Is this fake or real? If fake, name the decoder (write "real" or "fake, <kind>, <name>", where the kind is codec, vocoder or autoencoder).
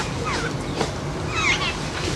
real